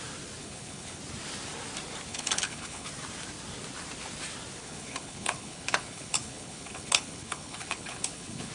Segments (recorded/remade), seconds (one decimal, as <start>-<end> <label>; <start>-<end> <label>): 0.0-0.4 recorded; 0.4-1.0 remade; 1.0-2.1 recorded; 2.1-2.9 remade; 2.9-4.6 recorded; 4.6-8.5 remade

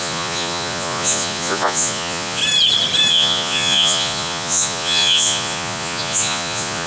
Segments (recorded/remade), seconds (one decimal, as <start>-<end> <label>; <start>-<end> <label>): 0.0-2.4 remade; 2.4-3.1 recorded; 3.1-6.9 remade

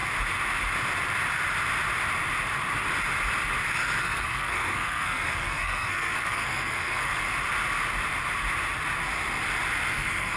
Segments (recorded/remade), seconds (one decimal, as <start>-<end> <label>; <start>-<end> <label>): 0.0-4.0 recorded; 4.0-7.1 remade; 7.1-9.9 recorded; 9.9-10.4 remade

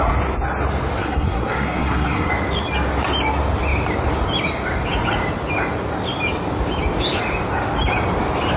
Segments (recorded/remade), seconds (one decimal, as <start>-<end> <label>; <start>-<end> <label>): 0.0-1.0 recorded; 1.0-2.3 remade; 2.3-8.6 recorded

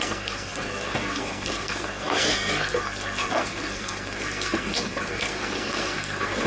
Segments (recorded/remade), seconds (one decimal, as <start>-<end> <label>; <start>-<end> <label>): 0.0-6.5 remade